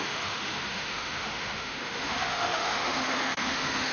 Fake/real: fake